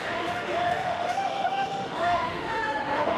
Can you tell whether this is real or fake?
fake